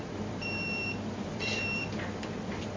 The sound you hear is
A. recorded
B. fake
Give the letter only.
B